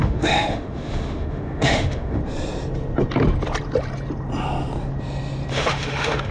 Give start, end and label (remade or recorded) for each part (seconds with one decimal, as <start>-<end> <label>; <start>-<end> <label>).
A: 0.0-2.2 remade; 2.2-5.5 recorded; 5.5-6.3 remade